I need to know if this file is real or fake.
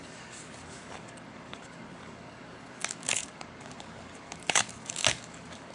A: fake